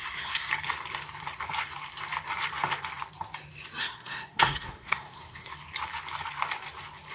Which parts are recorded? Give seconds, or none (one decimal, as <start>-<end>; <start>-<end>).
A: 0.5-3.8; 5.5-7.1